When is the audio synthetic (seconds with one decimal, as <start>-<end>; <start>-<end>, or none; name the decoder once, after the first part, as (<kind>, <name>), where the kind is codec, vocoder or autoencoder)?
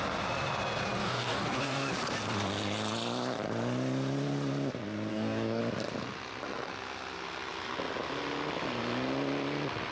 1.0-1.9 (codec, DAC); 5.1-5.6